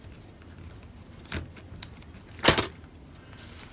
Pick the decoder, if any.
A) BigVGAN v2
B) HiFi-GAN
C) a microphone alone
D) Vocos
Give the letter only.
C